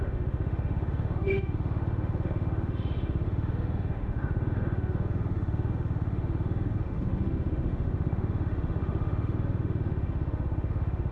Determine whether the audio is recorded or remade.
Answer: remade